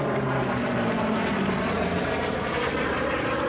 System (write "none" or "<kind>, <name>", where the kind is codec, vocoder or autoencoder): vocoder, BigVGAN v2